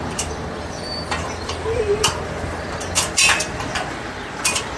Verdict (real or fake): fake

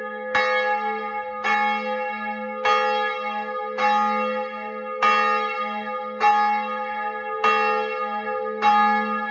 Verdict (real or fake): real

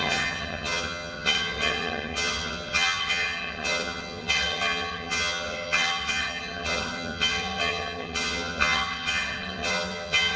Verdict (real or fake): fake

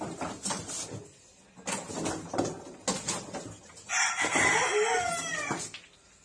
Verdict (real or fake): real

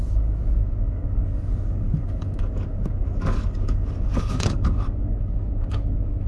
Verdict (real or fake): fake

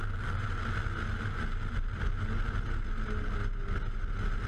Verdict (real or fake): real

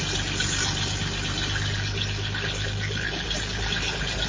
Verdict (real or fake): real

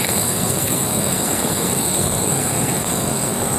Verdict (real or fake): fake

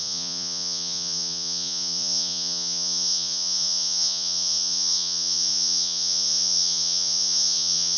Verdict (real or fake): fake